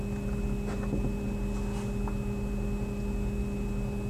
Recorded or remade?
recorded